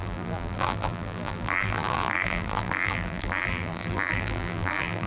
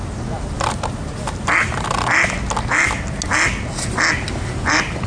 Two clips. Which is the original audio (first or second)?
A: second